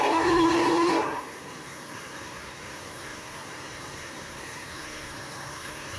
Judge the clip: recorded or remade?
remade